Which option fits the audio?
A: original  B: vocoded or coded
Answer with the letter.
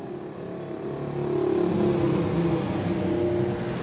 A